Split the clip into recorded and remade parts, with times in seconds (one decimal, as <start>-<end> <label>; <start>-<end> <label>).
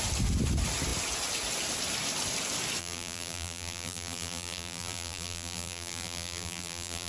0.0-2.8 recorded; 2.8-7.1 remade